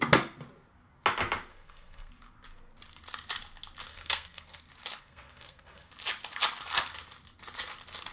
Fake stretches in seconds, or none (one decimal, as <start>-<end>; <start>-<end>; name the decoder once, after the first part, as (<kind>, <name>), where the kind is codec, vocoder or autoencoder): 1.5-2.1 (codec, SNAC); 3.9-4.6; 5.0-5.9